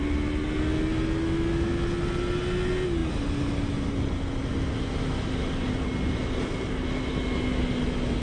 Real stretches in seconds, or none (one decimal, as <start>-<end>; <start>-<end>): 0.0-8.2